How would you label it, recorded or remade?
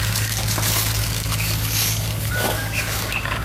remade